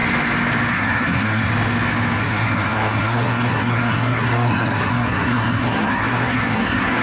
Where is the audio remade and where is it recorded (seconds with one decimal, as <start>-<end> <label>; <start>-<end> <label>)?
0.0-0.7 recorded; 0.7-1.5 remade; 1.5-2.2 recorded; 2.2-7.0 remade